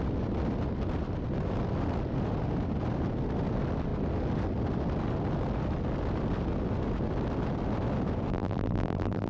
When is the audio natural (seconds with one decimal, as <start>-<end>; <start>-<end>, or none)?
0.0-8.3